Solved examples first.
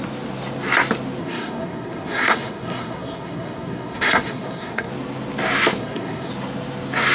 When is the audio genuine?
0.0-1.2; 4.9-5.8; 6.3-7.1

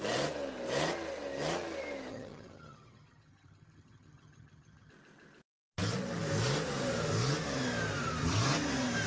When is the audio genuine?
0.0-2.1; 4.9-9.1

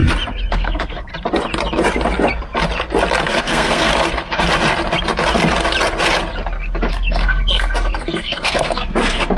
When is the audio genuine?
0.0-0.5; 1.1-3.4; 3.9-6.9